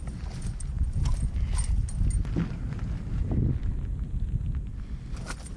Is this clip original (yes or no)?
yes